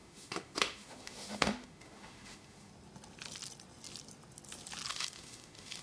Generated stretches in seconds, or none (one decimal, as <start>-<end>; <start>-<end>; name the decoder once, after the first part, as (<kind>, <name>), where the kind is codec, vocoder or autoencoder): 0.0-2.7 (autoencoder, DAC-VAE); 4.9-5.8